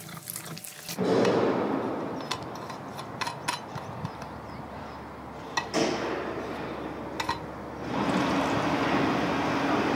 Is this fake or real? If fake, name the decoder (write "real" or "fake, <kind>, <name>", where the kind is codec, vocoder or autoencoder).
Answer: real